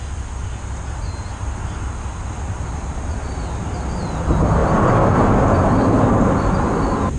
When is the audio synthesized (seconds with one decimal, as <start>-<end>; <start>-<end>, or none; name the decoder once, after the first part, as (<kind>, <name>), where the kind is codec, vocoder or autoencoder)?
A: none